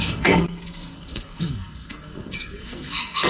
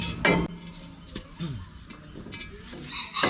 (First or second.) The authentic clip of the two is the second